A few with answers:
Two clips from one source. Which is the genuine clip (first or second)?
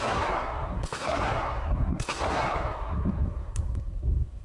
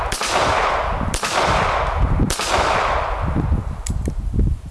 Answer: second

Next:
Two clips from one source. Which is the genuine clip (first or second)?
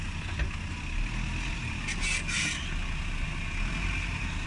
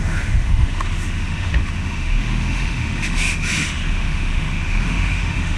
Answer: first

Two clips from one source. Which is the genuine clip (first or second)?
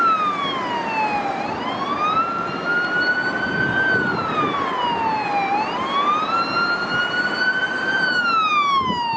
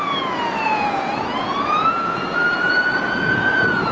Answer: first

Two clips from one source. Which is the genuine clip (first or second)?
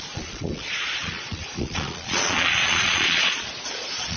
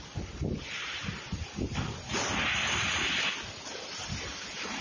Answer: second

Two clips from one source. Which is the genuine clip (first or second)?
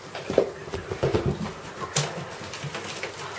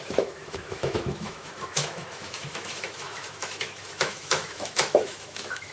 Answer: first